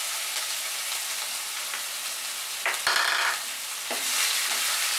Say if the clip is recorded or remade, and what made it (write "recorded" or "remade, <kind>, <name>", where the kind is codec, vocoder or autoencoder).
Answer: recorded